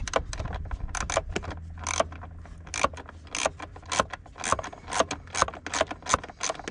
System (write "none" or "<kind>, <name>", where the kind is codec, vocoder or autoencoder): none